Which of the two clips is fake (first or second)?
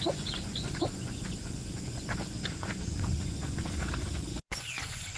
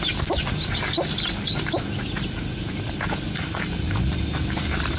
first